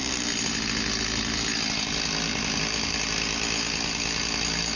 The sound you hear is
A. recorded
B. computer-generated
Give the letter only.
A